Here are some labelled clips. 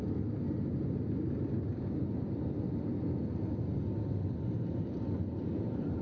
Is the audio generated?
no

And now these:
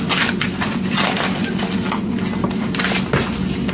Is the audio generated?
no